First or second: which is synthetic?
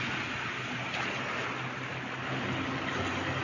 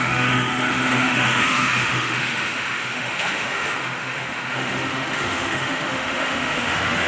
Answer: second